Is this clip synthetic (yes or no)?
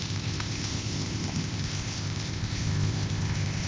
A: yes